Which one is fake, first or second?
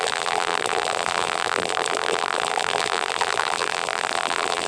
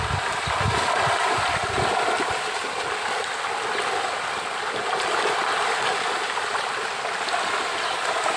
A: first